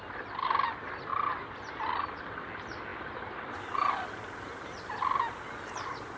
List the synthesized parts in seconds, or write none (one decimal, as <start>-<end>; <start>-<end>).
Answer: none